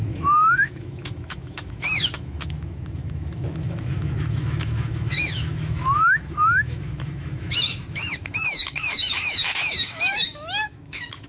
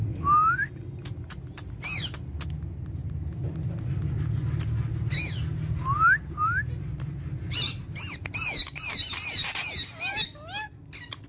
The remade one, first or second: first